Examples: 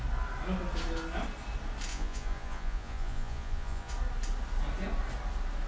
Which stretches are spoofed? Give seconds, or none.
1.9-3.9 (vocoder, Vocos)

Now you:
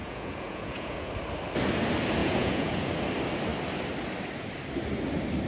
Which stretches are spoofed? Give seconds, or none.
0.0-1.1 (vocoder, Vocos); 2.2-2.9

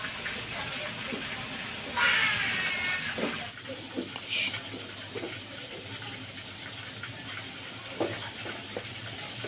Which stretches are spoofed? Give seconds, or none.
none